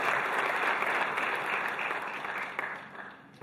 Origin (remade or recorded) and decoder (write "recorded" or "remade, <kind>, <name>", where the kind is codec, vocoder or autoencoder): remade, vocoder, BigVGAN v2